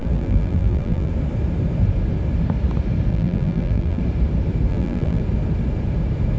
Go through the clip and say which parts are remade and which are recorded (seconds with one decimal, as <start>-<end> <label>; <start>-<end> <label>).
0.0-1.1 remade; 1.1-3.1 recorded; 3.1-4.0 remade; 4.0-4.7 recorded; 4.7-5.2 remade; 5.2-6.4 recorded